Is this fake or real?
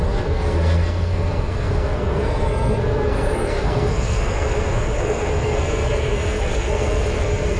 fake